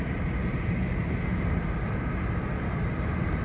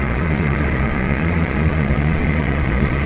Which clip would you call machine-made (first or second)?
second